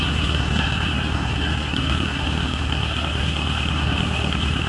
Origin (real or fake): fake